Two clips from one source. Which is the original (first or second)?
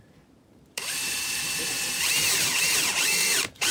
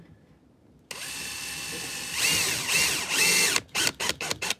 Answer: second